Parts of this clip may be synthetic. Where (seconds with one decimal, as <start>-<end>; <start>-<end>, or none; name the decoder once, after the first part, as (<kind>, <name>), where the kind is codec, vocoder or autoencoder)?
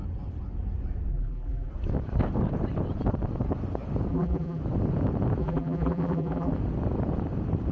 1.1-1.7 (vocoder, BigVGAN v2); 4.1-4.6; 5.4-6.5